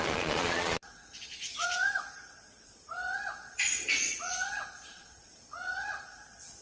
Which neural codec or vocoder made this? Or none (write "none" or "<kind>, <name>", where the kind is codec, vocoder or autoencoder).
vocoder, Vocos